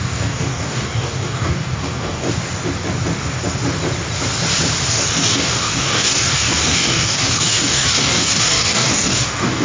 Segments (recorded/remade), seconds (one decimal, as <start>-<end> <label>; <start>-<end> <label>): 0.0-2.4 remade; 2.4-4.9 recorded; 4.9-9.6 remade